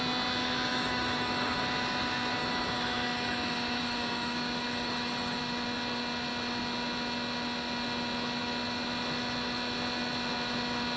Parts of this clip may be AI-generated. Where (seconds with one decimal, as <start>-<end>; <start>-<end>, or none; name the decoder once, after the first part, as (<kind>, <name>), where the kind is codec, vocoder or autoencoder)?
0.7-1.6 (autoencoder, DAC-VAE); 2.4-5.4